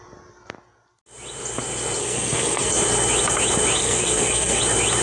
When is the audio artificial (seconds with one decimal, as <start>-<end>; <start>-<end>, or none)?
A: 2.0-2.7; 3.8-4.6